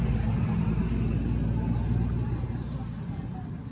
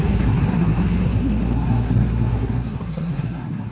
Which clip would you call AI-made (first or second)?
second